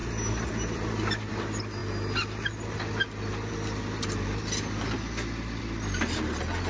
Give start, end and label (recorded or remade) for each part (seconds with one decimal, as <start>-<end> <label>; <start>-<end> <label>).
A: 0.0-6.7 recorded